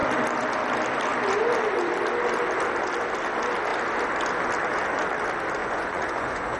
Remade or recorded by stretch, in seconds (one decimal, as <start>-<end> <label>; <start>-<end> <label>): 0.0-5.6 recorded; 5.6-6.6 remade